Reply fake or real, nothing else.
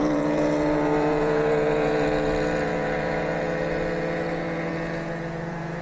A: fake